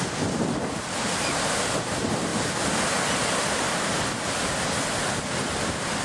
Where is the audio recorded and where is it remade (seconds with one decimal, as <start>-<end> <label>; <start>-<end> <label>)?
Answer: 0.0-6.0 recorded